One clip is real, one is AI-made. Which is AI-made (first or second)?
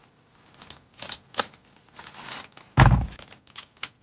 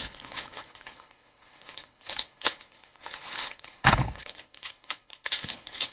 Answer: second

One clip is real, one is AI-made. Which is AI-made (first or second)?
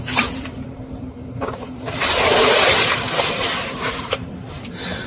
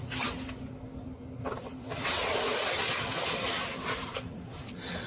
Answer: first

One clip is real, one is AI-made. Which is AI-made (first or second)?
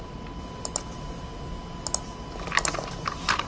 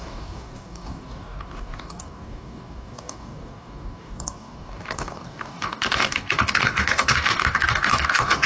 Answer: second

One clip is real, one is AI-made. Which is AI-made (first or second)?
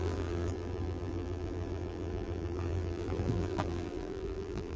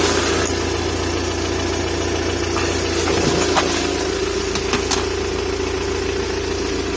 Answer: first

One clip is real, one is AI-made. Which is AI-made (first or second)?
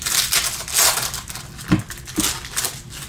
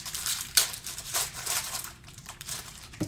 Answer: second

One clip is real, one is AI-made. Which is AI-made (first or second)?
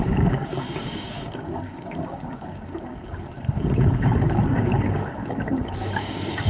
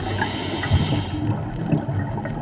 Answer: first